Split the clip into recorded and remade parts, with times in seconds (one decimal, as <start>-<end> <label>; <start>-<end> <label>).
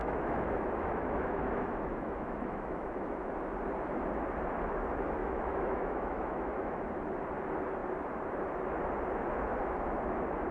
0.0-3.3 remade; 3.3-5.2 recorded; 5.2-6.8 remade; 6.8-10.5 recorded